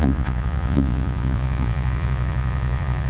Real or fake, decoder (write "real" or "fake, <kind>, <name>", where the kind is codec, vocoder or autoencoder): fake, vocoder, Vocos